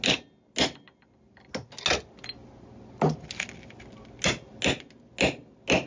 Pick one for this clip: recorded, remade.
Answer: recorded